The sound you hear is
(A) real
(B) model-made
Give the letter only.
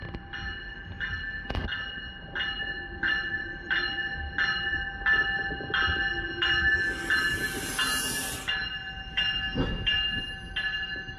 A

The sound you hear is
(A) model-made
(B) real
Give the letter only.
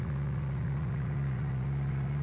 A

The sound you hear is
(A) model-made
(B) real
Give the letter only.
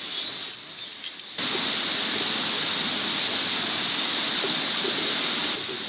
B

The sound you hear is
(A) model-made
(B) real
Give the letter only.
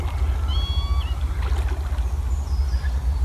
B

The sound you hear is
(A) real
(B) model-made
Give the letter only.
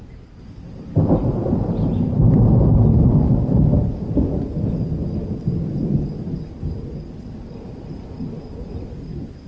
A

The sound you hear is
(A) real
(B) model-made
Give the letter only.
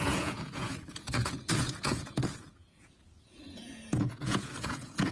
B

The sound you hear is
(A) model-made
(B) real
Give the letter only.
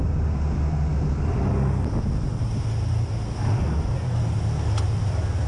B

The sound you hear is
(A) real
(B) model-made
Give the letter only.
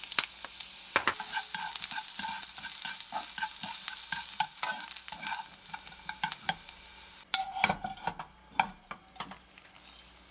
A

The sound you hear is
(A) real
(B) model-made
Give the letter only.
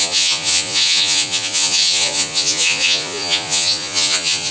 B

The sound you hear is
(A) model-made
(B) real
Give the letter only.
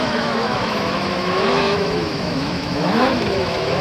A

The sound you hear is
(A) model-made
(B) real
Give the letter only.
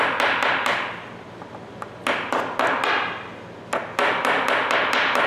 B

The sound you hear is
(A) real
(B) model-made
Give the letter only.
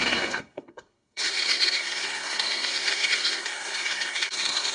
B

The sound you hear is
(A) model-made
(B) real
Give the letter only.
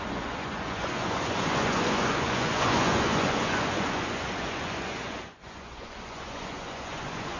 A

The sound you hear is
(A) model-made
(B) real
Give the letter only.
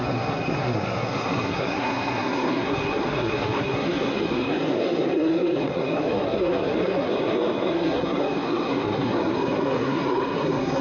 A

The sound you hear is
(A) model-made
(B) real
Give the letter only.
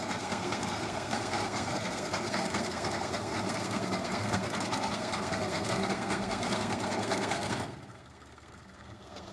A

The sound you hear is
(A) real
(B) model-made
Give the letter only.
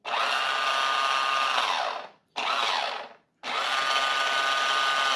A